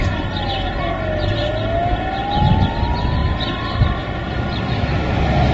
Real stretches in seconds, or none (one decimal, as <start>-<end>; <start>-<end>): 0.0-5.5